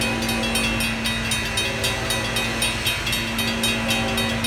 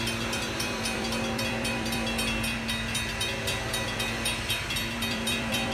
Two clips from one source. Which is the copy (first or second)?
second